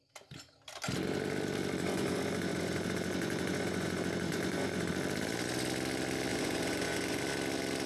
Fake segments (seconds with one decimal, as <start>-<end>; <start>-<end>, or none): 1.8-4.9; 6.3-7.2